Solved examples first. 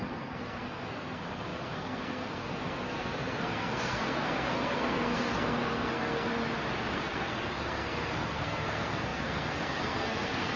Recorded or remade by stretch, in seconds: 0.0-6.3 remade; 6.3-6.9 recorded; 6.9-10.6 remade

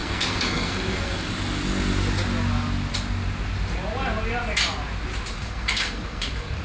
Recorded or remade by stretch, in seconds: 0.0-1.3 remade; 1.3-5.3 recorded; 5.3-6.6 remade

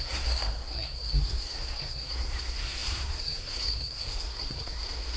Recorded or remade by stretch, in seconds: 0.0-5.2 remade

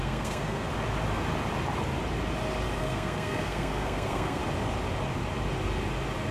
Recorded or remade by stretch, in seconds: 0.0-0.7 remade; 0.7-2.8 recorded; 2.8-4.4 remade; 4.4-6.3 recorded

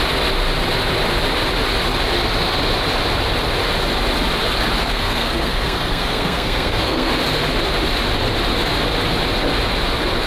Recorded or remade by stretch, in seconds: 0.0-4.8 recorded; 4.8-7.1 remade; 7.1-10.3 recorded

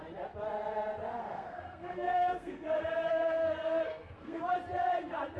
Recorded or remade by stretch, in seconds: 0.0-1.2 recorded; 1.2-4.4 remade; 4.4-5.4 recorded

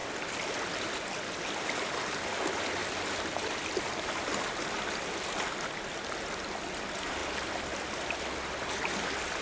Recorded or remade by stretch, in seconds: 0.0-9.4 recorded